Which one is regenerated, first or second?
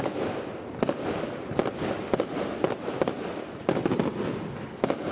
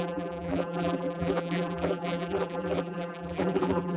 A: second